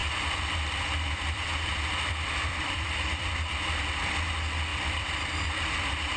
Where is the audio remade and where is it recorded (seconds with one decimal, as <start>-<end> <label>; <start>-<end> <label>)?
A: 0.0-3.7 remade; 3.7-4.7 recorded; 4.7-5.7 remade; 5.7-6.2 recorded